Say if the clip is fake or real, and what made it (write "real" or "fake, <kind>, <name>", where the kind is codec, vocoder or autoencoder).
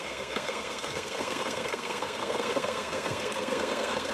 fake, codec, SNAC